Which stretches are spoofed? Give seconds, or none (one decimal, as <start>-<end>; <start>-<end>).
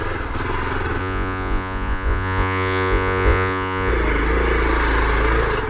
1.0-3.9